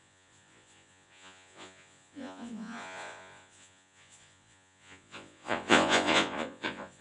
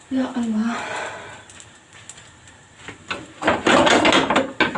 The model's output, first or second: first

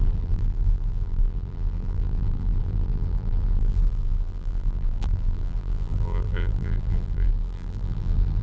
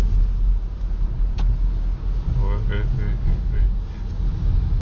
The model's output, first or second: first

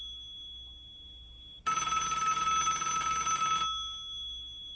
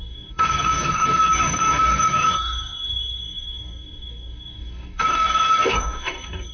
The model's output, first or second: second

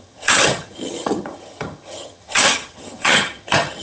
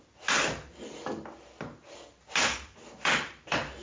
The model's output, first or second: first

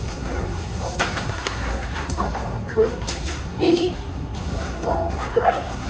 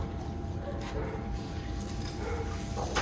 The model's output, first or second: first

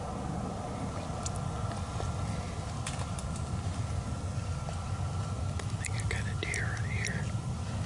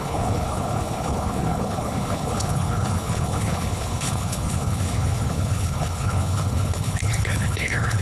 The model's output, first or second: second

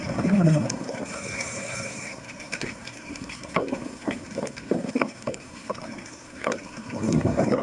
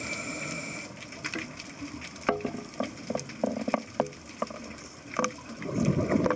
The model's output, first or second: first